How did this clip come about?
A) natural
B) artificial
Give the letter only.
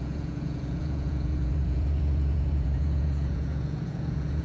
B